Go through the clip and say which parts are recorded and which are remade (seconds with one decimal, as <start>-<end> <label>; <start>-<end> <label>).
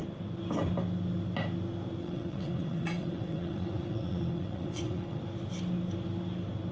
0.0-2.0 recorded; 2.0-5.2 remade; 5.2-6.7 recorded